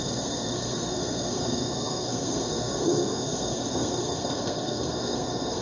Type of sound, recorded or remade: remade